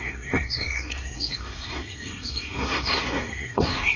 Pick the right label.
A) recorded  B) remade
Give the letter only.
B